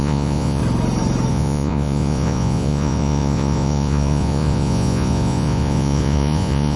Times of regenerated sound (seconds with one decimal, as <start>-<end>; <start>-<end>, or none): 0.0-0.6; 1.3-6.8